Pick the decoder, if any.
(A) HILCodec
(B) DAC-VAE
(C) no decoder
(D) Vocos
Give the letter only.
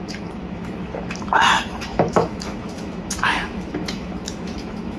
B